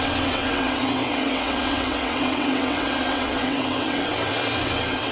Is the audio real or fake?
fake